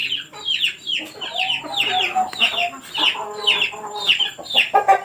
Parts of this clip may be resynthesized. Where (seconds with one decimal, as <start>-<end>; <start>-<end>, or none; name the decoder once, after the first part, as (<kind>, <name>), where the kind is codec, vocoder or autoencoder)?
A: 2.1-2.8 (autoencoder, DAC-VAE)